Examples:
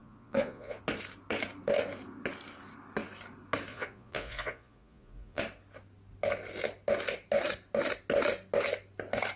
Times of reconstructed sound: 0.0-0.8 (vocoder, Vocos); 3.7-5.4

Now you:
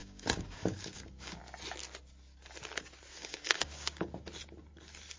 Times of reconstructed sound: 0.0-1.4 (codec, DAC); 3.2-4.1

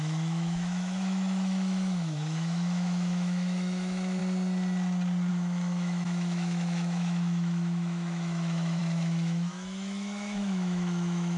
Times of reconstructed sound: 0.0-4.2 (autoencoder, DAC-VAE); 5.3-11.4

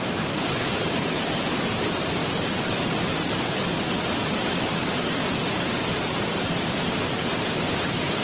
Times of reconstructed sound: 2.2-2.9 (vocoder, BigVGAN v2); 4.2-8.2